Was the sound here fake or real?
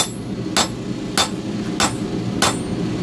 real